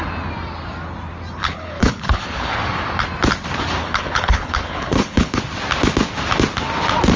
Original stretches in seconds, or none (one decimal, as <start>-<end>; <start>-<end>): 0.0-1.4; 2.6-3.8; 5.4-7.2